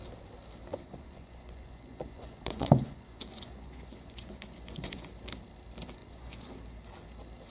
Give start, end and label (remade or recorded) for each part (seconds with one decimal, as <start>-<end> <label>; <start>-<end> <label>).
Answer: 0.0-0.7 recorded; 0.7-5.1 remade; 5.1-6.0 recorded; 6.0-6.5 remade; 6.5-7.5 recorded